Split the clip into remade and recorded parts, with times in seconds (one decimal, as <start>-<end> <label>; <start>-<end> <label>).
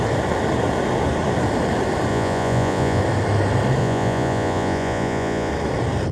0.0-2.1 recorded; 2.1-3.0 remade; 3.0-3.8 recorded; 3.8-5.5 remade; 5.5-6.1 recorded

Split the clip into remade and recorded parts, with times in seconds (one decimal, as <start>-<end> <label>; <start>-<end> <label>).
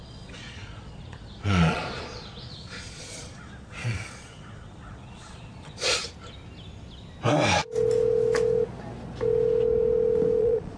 0.0-6.0 remade; 6.0-10.4 recorded; 10.4-10.8 remade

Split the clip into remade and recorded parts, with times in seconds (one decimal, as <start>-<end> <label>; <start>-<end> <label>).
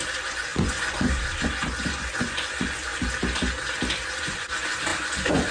0.0-2.9 remade; 2.9-4.0 recorded; 4.0-5.5 remade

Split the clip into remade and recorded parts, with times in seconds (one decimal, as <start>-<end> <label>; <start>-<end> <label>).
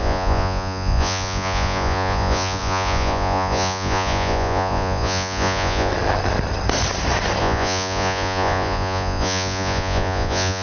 0.0-5.9 remade; 5.9-7.4 recorded; 7.4-10.6 remade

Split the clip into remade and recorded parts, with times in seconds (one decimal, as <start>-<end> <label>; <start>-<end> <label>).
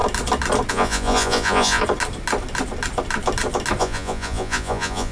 0.0-0.7 recorded; 0.7-1.8 remade; 1.8-3.8 recorded; 3.8-5.1 remade